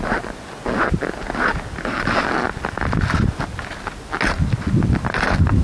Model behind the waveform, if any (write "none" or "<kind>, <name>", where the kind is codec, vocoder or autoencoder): none